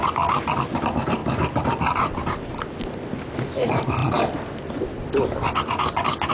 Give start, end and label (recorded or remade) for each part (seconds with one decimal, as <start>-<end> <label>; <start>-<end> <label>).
0.0-6.3 recorded